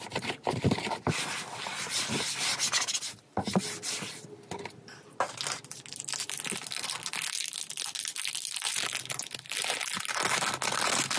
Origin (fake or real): real